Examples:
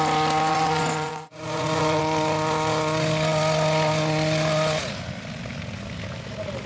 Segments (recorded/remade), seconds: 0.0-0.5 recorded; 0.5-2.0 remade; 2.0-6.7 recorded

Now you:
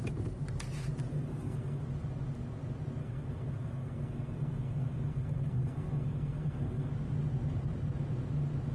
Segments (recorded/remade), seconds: 0.0-1.1 recorded; 1.1-1.8 remade; 1.8-3.0 recorded; 3.0-6.9 remade; 6.9-8.7 recorded

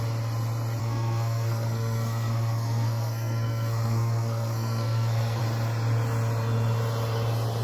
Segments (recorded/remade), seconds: 0.0-0.8 recorded; 0.8-5.4 remade; 5.4-7.6 recorded

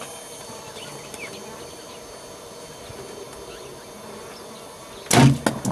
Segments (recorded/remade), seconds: 0.0-5.7 recorded